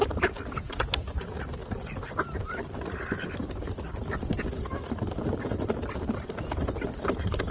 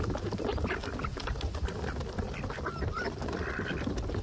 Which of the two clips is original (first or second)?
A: second